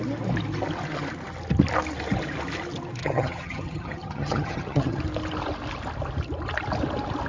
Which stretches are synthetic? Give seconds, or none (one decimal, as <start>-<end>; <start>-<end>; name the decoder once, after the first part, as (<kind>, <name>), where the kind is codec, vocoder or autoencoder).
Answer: 3.0-5.0 (vocoder, HiFi-GAN)